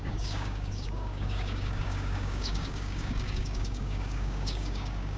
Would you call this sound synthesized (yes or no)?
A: yes